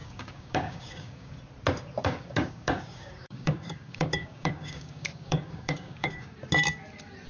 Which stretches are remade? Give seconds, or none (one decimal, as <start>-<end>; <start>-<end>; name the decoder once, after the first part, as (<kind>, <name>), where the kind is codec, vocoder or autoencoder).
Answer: 0.0-1.3 (codec, DAC); 2.0-6.3